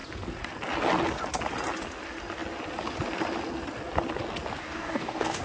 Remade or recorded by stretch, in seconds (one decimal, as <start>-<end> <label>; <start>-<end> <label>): 0.0-4.6 recorded; 4.6-5.4 remade